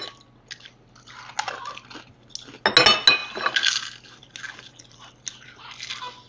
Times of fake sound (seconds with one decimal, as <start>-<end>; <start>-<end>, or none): none